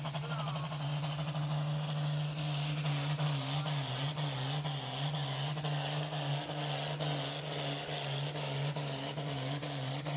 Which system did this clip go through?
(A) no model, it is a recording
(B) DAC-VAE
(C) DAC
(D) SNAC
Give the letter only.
A